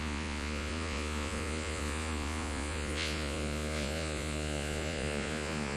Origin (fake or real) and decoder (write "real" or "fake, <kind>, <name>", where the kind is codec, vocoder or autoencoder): fake, vocoder, Vocos